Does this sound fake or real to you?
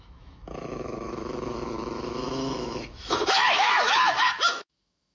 fake